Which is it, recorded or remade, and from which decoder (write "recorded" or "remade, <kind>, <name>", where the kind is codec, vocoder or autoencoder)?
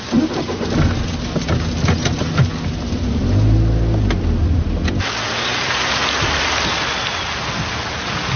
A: recorded